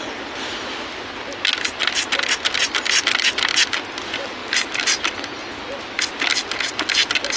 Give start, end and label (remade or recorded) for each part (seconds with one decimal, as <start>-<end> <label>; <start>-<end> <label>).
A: 0.0-7.4 recorded